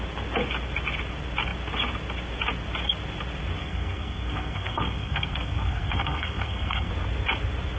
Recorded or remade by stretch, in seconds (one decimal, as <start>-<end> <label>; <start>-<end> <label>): 0.0-3.6 recorded; 3.6-6.9 remade; 6.9-7.8 recorded